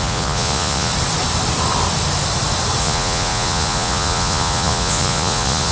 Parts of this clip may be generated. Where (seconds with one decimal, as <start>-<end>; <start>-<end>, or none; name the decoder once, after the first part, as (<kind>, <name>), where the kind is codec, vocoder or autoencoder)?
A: 0.0-0.9 (vocoder, Vocos); 2.8-5.7